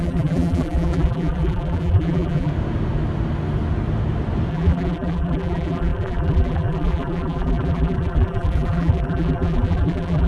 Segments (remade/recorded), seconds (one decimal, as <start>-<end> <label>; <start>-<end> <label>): 0.0-2.5 remade; 2.5-4.5 recorded; 4.5-10.3 remade